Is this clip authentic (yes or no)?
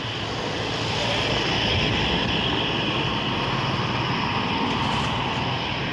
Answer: yes